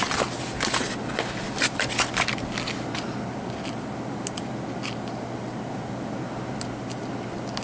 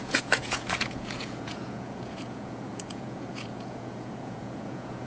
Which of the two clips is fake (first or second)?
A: second